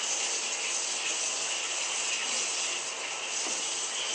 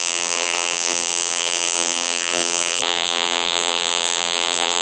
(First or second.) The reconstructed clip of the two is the second